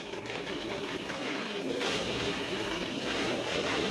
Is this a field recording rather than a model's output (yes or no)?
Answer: no